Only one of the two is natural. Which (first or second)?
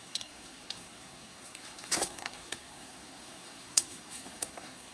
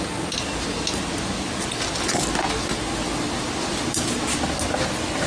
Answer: second